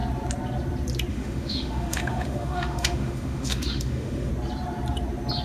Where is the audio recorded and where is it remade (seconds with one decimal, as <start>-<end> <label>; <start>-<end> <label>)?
0.0-1.1 recorded; 1.1-4.3 remade; 4.3-5.4 recorded